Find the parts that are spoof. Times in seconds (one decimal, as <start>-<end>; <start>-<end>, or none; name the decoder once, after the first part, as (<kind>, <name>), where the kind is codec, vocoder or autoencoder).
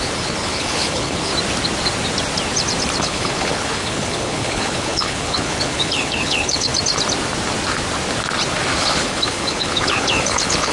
0.0-1.3 (codec, HILCodec); 3.0-6.7; 8.8-10.7